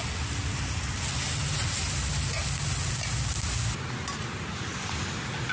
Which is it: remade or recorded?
recorded